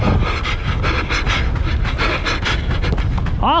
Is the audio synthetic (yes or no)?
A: no